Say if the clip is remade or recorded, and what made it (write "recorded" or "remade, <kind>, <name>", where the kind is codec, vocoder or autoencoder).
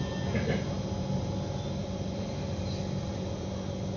recorded